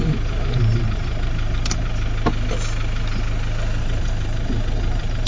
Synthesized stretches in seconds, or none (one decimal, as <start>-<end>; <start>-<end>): 0.0-1.9; 3.8-5.3